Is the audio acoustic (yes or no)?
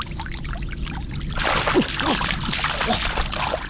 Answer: yes